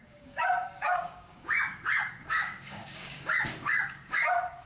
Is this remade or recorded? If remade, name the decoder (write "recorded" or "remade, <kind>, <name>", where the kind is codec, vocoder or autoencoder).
remade, codec, DAC